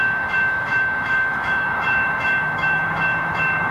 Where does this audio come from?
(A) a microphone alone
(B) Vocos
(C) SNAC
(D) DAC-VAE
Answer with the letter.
D